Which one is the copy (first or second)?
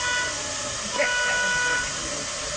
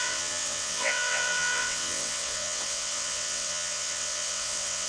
second